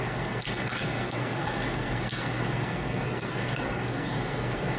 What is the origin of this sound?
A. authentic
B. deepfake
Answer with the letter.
B